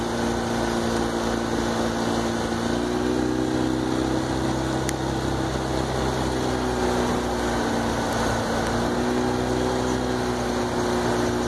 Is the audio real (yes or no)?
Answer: yes